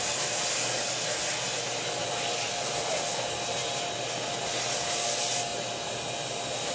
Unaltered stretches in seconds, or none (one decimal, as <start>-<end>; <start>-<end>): 0.0-2.0; 2.9-6.7